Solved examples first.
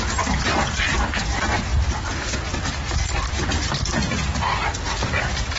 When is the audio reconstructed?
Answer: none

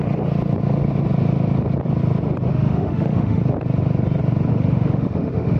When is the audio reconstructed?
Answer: 2.5-3.4 (autoencoder, DAC-VAE); 4.5-5.6